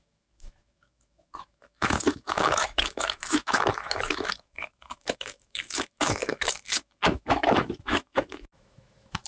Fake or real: fake